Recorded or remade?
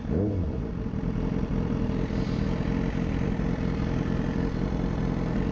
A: recorded